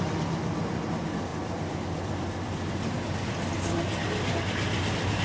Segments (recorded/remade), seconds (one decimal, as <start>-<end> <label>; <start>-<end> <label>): 0.0-5.2 recorded